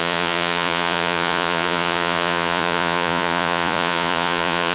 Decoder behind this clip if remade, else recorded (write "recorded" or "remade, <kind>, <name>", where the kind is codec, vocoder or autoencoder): remade, vocoder, Vocos